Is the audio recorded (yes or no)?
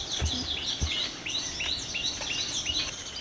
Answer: yes